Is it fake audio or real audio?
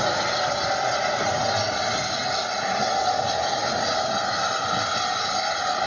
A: real